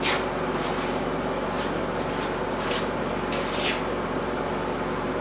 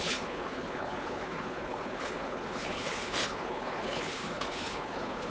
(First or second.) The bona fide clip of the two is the first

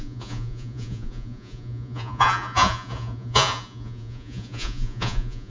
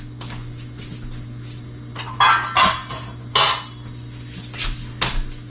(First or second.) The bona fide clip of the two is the second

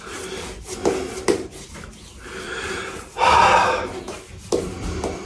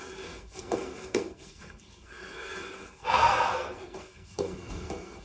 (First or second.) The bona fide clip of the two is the first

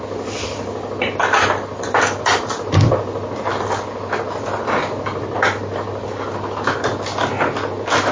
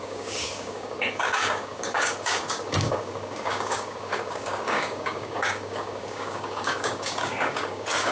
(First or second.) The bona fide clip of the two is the first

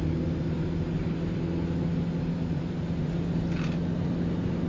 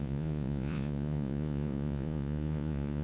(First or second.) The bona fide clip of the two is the first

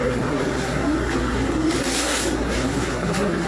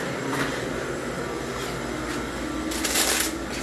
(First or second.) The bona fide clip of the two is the second